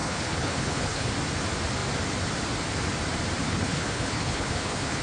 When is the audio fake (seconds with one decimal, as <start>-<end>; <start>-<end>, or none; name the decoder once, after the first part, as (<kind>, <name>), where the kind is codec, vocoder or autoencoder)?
0.0-1.1 (codec, HILCodec); 3.4-5.0

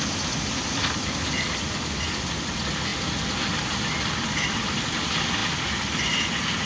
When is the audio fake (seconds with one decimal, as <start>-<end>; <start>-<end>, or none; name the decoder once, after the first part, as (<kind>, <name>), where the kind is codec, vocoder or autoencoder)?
none

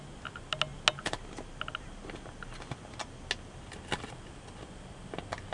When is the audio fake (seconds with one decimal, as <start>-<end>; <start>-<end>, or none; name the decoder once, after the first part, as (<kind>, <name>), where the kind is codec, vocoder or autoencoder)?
none

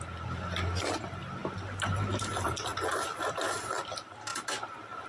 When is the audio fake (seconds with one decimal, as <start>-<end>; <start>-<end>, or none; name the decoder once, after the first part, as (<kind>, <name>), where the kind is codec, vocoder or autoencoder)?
none

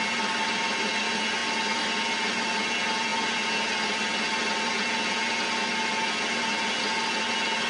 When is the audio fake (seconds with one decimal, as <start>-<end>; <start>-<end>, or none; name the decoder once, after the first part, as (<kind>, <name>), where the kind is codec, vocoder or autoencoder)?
none